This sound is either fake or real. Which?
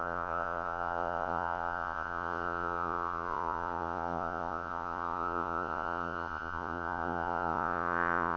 fake